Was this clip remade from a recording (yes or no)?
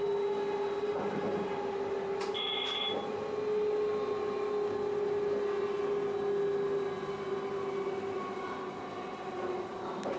no